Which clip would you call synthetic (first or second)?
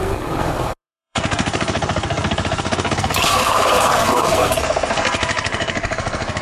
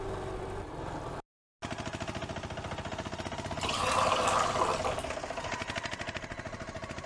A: first